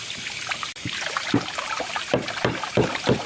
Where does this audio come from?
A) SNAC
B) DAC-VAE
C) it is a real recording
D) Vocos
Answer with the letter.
C